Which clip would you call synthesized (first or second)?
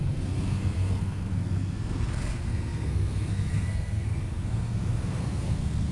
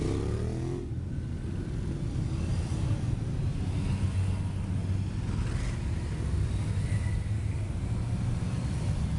first